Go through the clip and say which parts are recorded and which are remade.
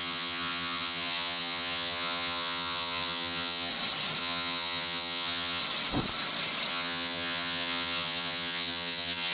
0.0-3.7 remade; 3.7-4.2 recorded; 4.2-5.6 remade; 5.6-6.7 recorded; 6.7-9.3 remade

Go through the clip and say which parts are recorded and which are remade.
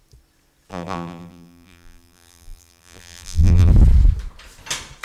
0.0-0.7 recorded; 0.7-3.7 remade; 3.7-5.0 recorded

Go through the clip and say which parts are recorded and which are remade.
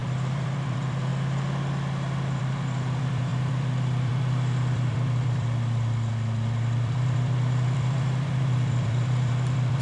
0.0-1.1 remade; 1.1-2.4 recorded; 2.4-9.8 remade